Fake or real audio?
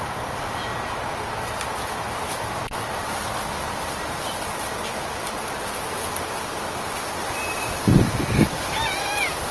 fake